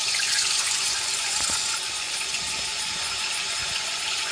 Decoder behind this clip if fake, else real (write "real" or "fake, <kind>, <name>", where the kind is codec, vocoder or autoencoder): fake, vocoder, Vocos